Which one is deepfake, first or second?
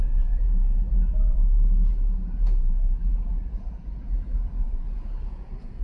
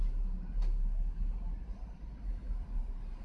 first